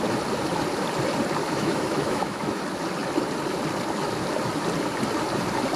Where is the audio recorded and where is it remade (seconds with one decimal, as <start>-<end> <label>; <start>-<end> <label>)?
0.0-1.4 recorded; 1.4-2.6 remade; 2.6-5.8 recorded